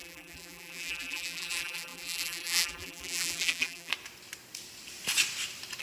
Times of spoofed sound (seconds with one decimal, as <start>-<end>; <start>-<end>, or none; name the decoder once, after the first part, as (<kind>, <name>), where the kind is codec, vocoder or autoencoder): 0.0-3.9 (vocoder, BigVGAN v2)